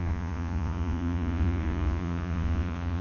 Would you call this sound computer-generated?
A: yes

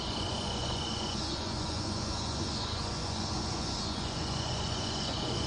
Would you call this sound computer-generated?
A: yes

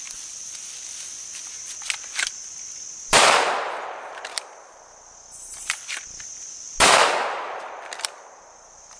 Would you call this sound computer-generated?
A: no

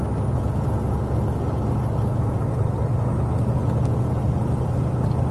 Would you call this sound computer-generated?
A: no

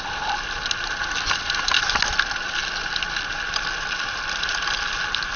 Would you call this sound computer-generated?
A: no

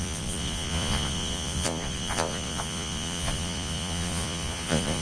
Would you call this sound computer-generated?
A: yes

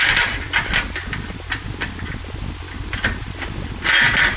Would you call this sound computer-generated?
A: no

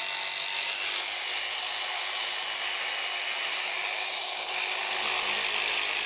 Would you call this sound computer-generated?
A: no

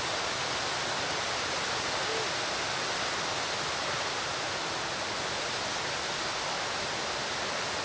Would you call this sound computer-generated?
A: no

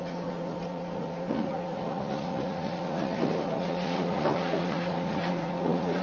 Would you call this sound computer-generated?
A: yes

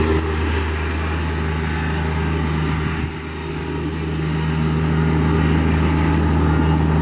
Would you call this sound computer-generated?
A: no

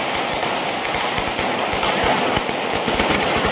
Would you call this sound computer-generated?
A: no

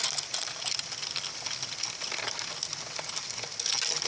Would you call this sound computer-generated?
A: no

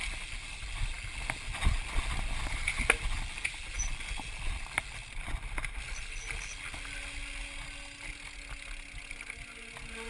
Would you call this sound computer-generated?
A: no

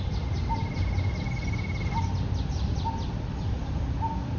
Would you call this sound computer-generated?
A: no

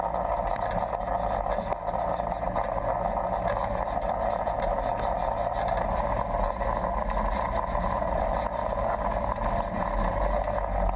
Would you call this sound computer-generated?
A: no